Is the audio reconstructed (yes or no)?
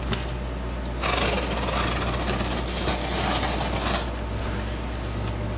no